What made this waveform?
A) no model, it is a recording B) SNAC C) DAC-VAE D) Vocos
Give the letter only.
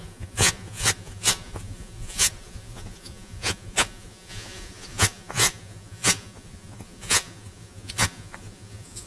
D